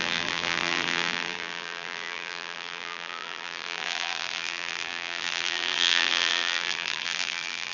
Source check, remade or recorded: remade